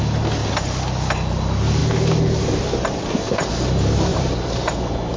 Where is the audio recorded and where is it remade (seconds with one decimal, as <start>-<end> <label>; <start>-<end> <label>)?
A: 0.0-4.1 recorded; 4.1-4.8 remade; 4.8-5.2 recorded